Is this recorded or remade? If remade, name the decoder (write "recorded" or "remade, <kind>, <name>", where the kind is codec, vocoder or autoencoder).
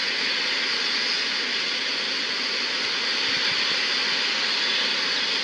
recorded